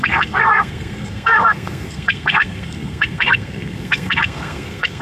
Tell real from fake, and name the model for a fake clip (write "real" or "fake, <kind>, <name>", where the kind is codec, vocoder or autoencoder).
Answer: fake, codec, SNAC